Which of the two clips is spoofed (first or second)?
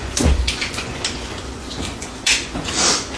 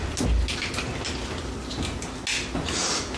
first